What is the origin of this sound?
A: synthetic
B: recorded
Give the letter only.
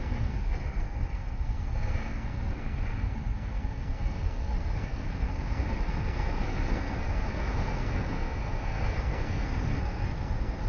A